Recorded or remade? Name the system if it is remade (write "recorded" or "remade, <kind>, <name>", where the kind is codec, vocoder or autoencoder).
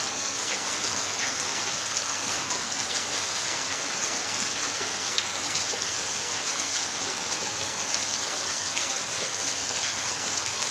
remade, codec, SNAC